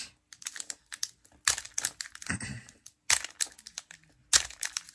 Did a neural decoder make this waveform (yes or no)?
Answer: no